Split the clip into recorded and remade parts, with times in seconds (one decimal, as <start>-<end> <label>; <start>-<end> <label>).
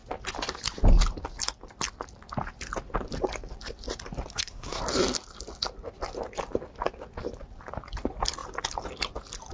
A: 0.0-4.3 recorded; 4.3-4.8 remade; 4.8-9.5 recorded